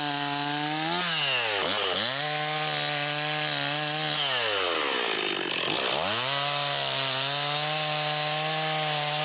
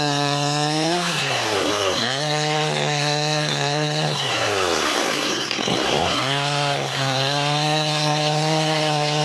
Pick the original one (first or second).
first